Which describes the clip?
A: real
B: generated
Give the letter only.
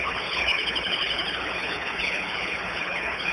B